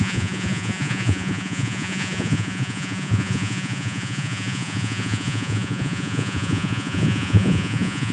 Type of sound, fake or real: fake